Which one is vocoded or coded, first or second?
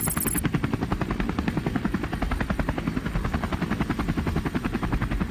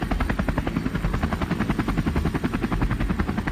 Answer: first